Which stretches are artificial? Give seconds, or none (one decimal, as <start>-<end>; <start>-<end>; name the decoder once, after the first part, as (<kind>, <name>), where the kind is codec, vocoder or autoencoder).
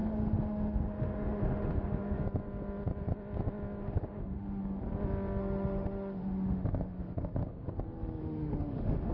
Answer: 0.0-2.2 (autoencoder, DAC-VAE); 3.8-4.6; 5.4-7.7; 8.2-9.1